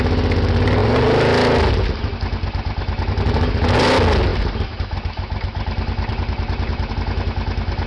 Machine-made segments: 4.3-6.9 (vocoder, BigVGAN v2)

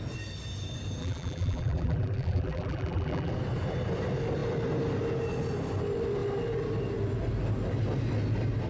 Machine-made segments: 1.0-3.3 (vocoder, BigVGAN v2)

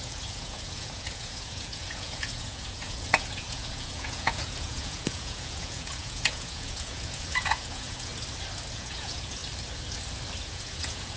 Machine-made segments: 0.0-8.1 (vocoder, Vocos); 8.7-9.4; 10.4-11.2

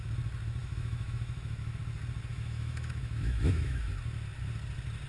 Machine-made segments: 0.6-1.8 (autoencoder, DAC-VAE); 2.3-3.9

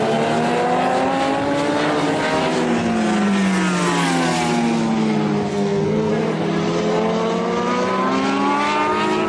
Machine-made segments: 5.5-6.1 (codec, SNAC)